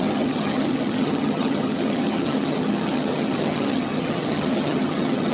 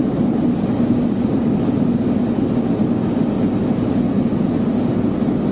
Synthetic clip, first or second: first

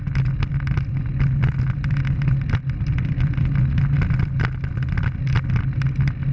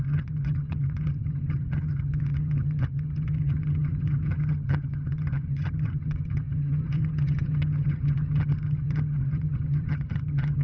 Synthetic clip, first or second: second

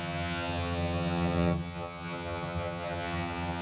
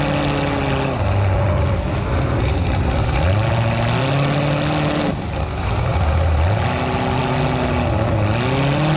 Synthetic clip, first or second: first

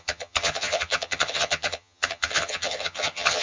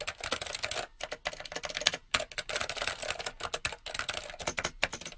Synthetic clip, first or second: first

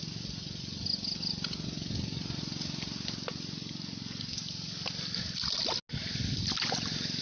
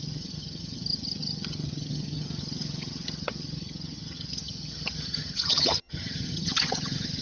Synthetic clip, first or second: second